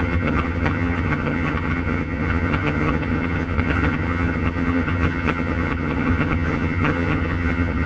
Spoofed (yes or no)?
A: yes